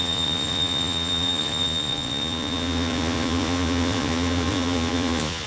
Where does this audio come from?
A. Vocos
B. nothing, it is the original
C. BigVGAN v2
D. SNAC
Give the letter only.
A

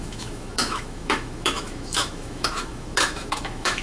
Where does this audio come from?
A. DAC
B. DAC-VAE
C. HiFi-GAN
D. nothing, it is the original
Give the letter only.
B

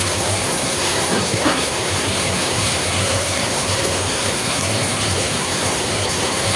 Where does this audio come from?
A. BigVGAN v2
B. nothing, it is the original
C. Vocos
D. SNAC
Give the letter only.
D